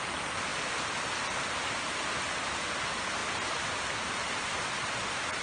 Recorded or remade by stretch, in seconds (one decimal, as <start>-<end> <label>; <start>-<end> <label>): 0.0-5.4 recorded